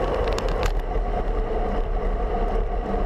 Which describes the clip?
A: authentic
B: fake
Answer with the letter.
B